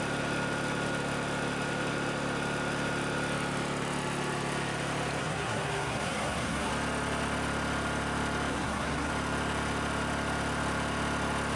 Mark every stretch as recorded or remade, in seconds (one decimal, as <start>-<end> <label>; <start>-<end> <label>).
0.0-5.2 recorded; 5.2-6.7 remade; 6.7-8.5 recorded; 8.5-9.1 remade; 9.1-11.6 recorded